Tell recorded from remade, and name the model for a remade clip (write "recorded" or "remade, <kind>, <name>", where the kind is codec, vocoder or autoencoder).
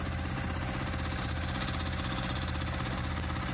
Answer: recorded